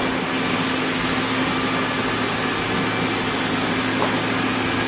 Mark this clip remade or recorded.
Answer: recorded